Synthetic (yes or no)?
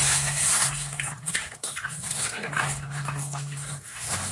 yes